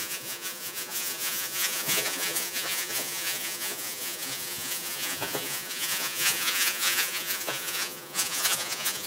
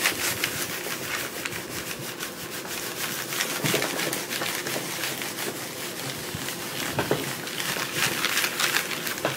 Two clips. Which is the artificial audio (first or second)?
first